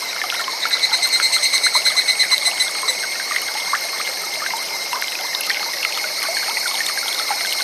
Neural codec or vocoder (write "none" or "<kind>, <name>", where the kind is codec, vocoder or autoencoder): none